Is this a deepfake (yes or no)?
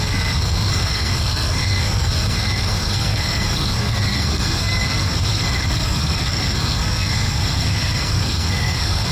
yes